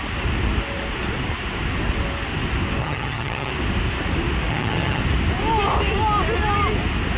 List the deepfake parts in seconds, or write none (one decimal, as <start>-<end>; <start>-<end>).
2.8-3.5; 4.5-5.0